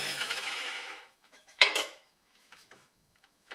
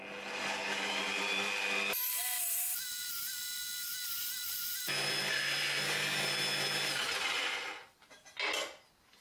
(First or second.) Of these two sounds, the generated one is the first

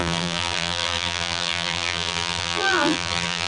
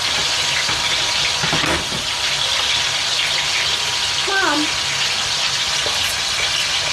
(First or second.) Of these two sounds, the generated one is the first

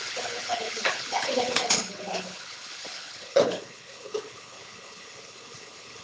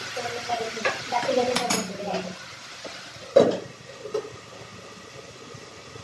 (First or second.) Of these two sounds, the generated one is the first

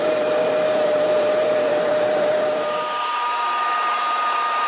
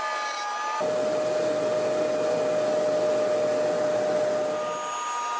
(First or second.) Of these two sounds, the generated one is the first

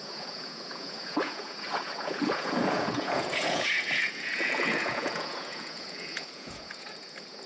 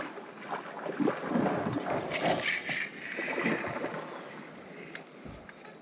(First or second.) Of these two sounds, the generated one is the first